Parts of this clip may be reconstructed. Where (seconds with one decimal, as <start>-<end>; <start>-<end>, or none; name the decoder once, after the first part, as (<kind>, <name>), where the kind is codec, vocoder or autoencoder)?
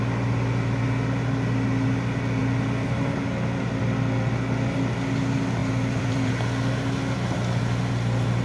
5.6-6.3 (vocoder, BigVGAN v2)